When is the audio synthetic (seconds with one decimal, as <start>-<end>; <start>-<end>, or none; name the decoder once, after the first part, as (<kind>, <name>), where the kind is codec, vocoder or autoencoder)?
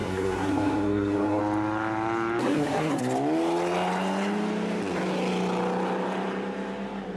0.0-1.4 (codec, SNAC); 2.4-3.0